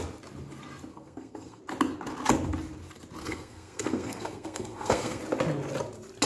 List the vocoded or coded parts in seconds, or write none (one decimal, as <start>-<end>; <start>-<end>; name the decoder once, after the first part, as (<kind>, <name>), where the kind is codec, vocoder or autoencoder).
0.9-1.6 (codec, SNAC); 3.2-5.2